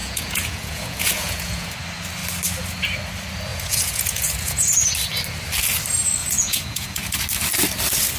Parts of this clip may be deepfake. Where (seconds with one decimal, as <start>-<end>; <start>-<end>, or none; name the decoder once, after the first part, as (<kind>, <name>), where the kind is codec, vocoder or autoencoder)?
0.0-1.7 (vocoder, Vocos); 3.5-4.9; 6.2-7.1